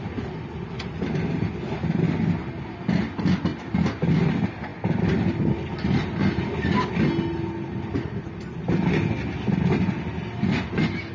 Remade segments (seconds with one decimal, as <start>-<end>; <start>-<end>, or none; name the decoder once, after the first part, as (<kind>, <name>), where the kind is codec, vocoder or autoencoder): none